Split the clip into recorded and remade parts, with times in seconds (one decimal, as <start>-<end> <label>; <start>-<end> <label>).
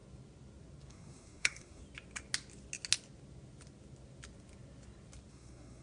0.0-0.9 recorded; 0.9-1.8 remade; 1.8-5.3 recorded; 5.3-5.8 remade